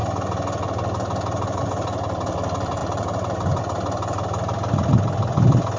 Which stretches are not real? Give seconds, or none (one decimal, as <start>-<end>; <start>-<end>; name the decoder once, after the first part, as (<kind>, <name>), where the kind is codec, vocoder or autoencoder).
2.8-3.6 (vocoder, BigVGAN v2)